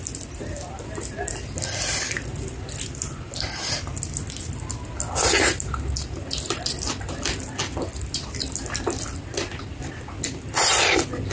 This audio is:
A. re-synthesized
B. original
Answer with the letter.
B